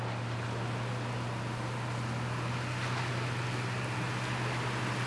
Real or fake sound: real